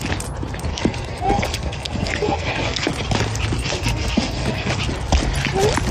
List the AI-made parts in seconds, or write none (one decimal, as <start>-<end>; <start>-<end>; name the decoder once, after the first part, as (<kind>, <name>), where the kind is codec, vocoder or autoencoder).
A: 0.7-2.9 (codec, SNAC); 3.6-4.7